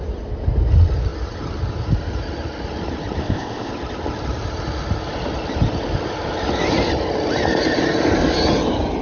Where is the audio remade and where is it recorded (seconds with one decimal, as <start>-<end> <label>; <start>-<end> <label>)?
0.0-3.2 recorded; 3.2-3.7 remade; 3.7-9.0 recorded